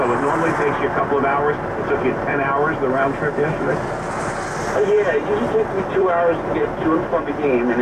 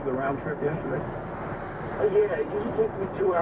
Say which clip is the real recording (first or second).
first